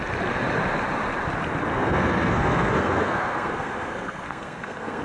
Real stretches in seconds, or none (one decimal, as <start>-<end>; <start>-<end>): 0.0-1.7